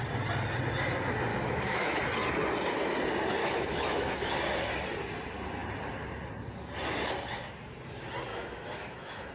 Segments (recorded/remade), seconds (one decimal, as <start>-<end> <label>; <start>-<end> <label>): 0.0-1.3 recorded; 1.3-2.0 remade; 2.0-3.4 recorded; 3.4-4.3 remade; 4.3-8.3 recorded; 8.3-9.3 remade